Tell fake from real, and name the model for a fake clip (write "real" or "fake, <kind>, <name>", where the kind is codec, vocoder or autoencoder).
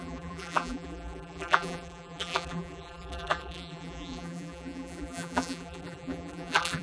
fake, vocoder, BigVGAN v2